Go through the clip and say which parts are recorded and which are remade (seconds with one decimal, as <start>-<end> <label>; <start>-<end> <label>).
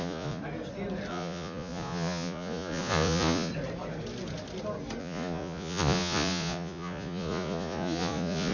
0.0-0.4 remade; 0.4-1.1 recorded; 1.1-3.5 remade; 3.5-5.0 recorded; 5.0-8.5 remade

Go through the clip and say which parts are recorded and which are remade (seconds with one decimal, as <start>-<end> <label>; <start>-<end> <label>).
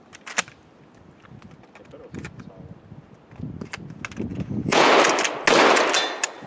0.0-4.3 recorded; 4.3-4.9 remade; 4.9-6.5 recorded